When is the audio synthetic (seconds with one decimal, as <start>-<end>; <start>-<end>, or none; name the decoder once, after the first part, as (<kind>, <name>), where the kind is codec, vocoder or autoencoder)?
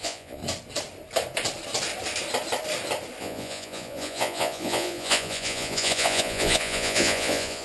0.0-0.4 (vocoder, Vocos); 3.2-7.6